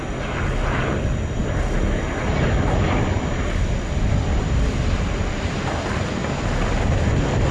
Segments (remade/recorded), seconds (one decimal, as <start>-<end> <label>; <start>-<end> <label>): 0.0-7.5 recorded